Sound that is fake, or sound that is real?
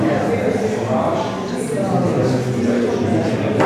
real